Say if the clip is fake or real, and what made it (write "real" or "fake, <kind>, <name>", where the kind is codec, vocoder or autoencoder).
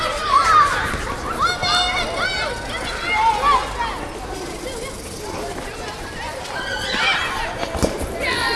real